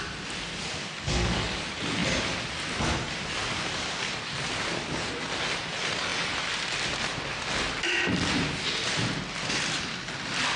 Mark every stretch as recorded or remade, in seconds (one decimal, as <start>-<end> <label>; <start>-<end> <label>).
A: 0.0-0.8 recorded; 0.8-1.6 remade; 1.6-10.6 recorded